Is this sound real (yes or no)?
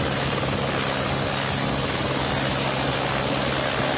yes